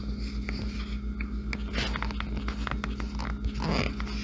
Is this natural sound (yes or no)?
yes